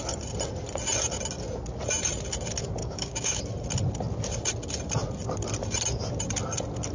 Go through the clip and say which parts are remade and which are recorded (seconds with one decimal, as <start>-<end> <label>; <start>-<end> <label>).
0.0-2.8 recorded; 2.8-3.4 remade; 3.4-6.9 recorded